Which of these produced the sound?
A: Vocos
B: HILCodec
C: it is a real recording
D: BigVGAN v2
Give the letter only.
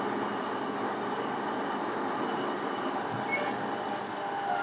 C